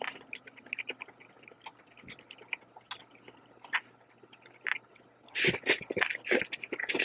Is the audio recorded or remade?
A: recorded